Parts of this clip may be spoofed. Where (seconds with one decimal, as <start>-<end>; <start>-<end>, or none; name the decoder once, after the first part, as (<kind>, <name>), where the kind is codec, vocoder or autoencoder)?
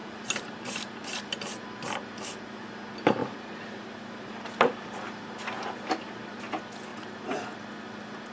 0.0-1.3 (vocoder, BigVGAN v2); 3.2-6.4